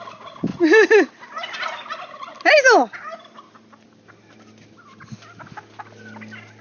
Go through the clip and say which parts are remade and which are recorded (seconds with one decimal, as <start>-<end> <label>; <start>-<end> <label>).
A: 0.0-6.6 recorded